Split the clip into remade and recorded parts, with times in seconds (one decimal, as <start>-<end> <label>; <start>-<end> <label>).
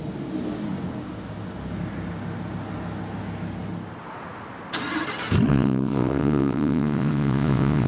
0.0-5.5 recorded; 5.5-7.9 remade